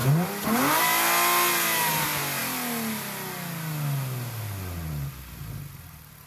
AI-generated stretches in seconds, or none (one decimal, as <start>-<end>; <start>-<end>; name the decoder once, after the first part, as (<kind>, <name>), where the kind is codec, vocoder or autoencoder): none